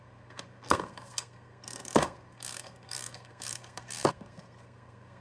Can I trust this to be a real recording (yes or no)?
no